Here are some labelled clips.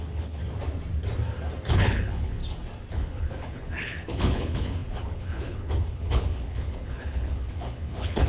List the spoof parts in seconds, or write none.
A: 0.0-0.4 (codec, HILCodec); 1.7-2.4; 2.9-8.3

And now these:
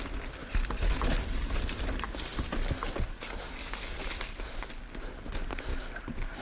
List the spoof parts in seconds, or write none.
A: none

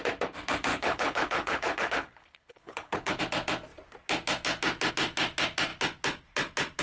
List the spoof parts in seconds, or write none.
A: 0.7-3.2 (codec, HILCodec)